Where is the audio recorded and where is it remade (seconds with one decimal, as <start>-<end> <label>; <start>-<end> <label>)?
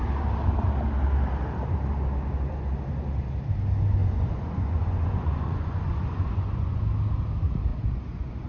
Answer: 0.0-4.0 recorded; 4.0-6.8 remade; 6.8-7.7 recorded; 7.7-8.5 remade